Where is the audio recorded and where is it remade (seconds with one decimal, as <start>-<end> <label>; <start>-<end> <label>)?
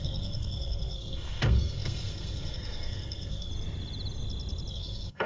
0.0-3.5 remade; 3.5-4.7 recorded; 4.7-5.3 remade